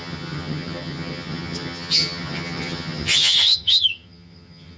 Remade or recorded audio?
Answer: remade